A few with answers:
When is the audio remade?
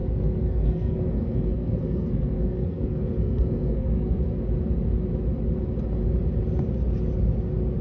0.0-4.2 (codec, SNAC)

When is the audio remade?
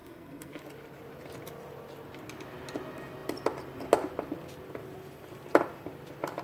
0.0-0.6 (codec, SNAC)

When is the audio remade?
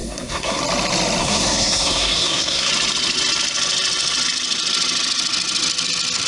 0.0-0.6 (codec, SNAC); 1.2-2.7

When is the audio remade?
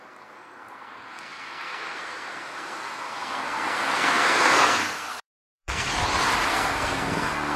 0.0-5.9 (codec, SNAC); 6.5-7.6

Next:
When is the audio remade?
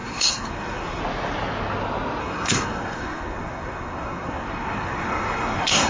0.0-1.0 (codec, SNAC); 2.2-5.9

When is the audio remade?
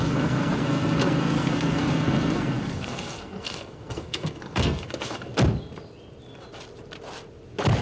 0.0-5.3 (codec, SNAC)